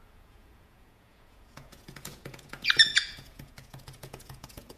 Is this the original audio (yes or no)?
no